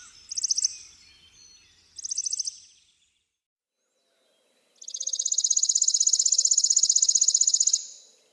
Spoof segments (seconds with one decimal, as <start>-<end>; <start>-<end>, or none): none